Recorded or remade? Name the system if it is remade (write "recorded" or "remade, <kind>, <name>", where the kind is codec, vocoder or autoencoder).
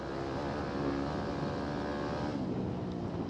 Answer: recorded